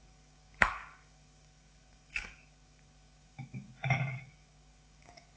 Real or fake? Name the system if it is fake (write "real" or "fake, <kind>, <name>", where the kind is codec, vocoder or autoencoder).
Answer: fake, codec, DAC